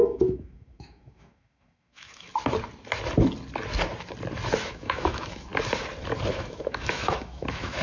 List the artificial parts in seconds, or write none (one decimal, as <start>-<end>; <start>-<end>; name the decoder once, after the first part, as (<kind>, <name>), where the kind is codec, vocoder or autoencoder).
0.0-2.3 (autoencoder, DAC-VAE); 4.6-5.5; 6.3-7.8